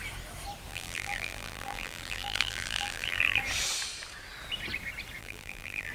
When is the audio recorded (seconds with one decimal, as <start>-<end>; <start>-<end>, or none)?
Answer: 0.0-0.7; 3.4-5.2